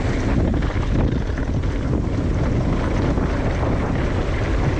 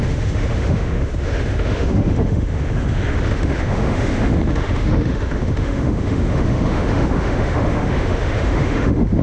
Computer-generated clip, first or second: second